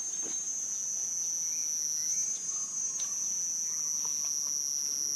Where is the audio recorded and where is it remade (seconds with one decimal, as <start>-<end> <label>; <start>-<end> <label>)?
0.0-5.2 recorded